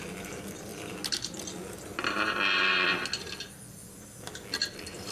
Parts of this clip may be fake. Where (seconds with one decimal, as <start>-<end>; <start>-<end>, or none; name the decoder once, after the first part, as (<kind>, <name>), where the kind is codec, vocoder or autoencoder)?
none